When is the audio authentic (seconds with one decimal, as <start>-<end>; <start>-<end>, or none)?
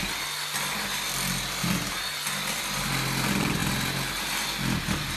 0.0-5.2